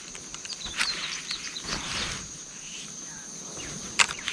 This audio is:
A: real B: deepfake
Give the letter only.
B